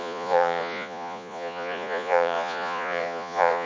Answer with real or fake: fake